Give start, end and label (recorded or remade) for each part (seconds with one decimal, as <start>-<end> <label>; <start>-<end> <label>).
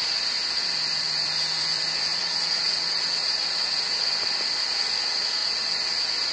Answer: 0.0-2.1 recorded; 2.1-3.7 remade; 3.7-6.3 recorded